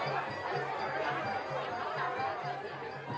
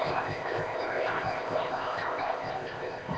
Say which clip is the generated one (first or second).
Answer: second